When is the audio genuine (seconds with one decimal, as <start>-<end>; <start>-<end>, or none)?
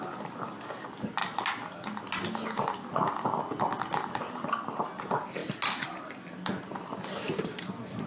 0.0-8.1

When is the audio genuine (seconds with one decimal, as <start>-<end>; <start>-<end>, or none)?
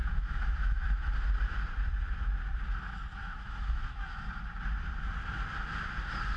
1.1-3.2; 4.2-6.4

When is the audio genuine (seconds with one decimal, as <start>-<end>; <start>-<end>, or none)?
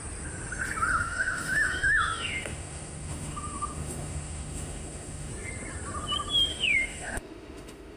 0.0-0.9; 5.3-6.5